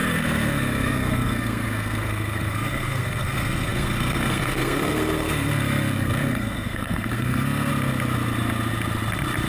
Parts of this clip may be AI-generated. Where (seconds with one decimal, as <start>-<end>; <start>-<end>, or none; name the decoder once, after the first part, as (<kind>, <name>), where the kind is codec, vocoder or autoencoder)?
0.0-7.7 (codec, SNAC)